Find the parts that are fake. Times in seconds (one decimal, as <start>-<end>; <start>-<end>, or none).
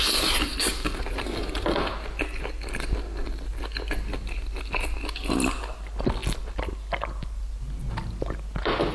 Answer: none